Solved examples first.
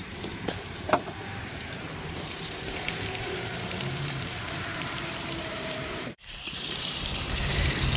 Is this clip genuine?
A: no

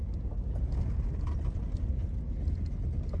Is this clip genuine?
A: yes